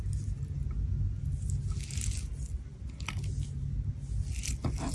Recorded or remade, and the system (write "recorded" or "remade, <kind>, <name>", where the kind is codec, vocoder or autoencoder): recorded